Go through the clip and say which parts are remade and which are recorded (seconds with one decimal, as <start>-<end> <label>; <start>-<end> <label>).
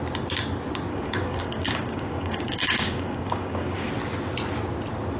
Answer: 0.0-0.9 recorded; 0.9-3.9 remade; 3.9-5.2 recorded